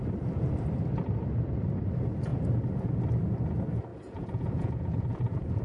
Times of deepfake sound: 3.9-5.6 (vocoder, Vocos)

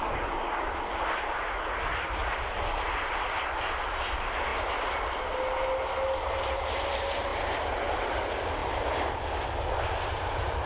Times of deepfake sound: 2.2-3.6 (vocoder, BigVGAN v2); 7.3-8.1; 8.6-9.1

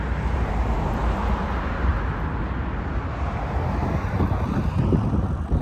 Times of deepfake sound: 0.0-1.0 (vocoder, BigVGAN v2); 1.5-1.9; 5.1-5.6

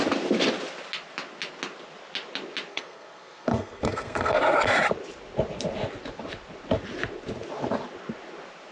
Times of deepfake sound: 2.7-4.4 (codec, SNAC)